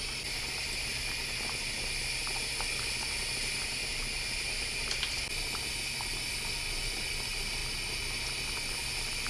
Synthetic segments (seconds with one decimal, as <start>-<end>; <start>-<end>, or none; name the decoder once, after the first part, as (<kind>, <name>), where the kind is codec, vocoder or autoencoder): none